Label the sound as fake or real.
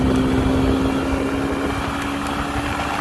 real